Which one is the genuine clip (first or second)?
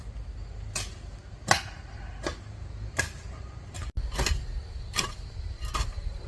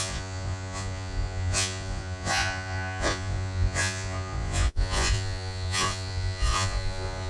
first